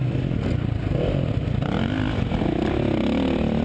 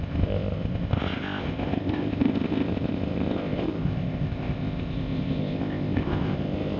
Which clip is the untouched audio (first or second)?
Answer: first